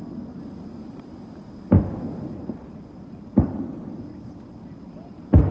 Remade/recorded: recorded